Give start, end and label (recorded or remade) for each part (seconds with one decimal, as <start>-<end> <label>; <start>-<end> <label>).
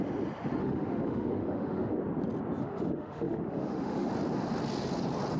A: 0.0-0.6 recorded; 0.6-2.0 remade; 2.0-2.6 recorded; 2.6-4.1 remade; 4.1-5.4 recorded